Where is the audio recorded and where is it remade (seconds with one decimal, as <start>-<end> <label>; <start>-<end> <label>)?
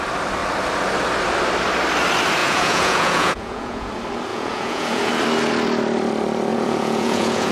0.0-2.4 recorded; 2.4-3.9 remade; 3.9-4.3 recorded; 4.3-5.1 remade; 5.1-6.5 recorded; 6.5-7.5 remade